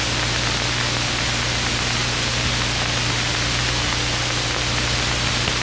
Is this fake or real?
real